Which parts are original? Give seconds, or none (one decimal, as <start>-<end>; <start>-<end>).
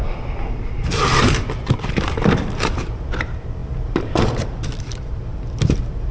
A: none